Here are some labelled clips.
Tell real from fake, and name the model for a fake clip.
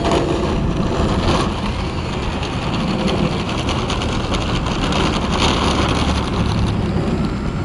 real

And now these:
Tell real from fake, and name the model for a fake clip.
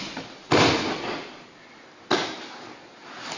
real